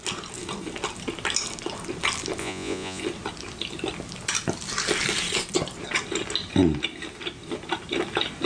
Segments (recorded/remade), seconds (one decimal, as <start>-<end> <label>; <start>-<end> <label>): 0.0-2.4 recorded; 2.4-3.0 remade; 3.0-8.5 recorded